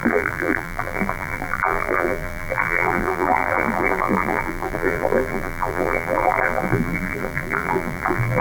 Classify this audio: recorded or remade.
remade